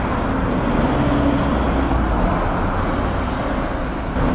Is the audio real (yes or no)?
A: yes